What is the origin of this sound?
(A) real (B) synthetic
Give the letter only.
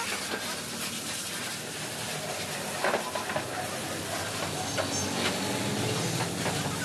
A